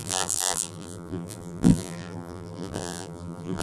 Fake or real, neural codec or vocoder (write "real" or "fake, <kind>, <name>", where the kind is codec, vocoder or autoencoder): fake, vocoder, BigVGAN v2